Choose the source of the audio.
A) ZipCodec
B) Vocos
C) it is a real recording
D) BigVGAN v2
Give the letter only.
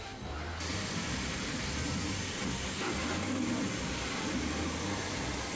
C